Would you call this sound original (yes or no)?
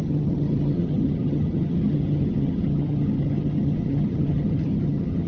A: no